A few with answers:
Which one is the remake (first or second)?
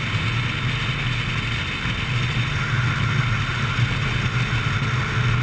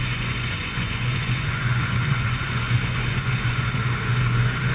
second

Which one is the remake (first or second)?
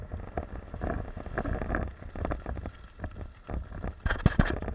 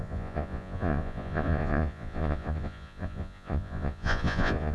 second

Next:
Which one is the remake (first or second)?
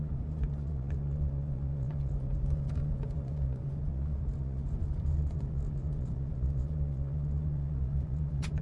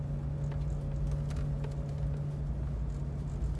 first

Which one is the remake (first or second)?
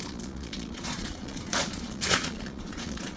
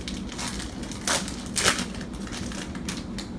first